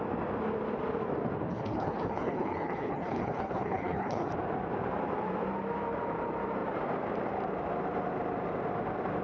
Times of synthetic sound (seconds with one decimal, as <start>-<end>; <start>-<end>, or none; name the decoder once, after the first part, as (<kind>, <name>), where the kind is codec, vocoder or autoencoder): 1.5-4.3 (codec, HILCodec)